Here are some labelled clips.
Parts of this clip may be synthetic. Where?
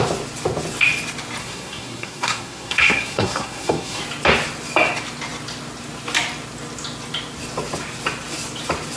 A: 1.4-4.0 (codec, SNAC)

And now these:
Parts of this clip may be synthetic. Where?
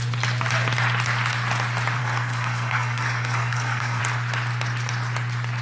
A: 2.0-4.0 (codec, SNAC)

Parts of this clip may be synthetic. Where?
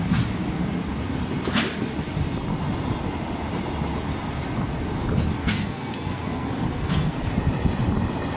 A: 5.4-7.3 (codec, SNAC)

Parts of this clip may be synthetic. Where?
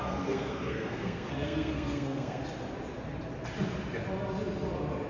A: 0.0-2.4 (codec, SNAC)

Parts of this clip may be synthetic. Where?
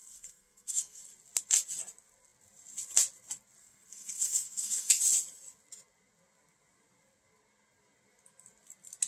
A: 0.0-1.0 (codec, SNAC); 3.6-5.0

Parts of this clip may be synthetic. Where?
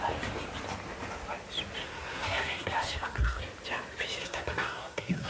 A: 1.8-3.4 (codec, SNAC); 4.2-5.3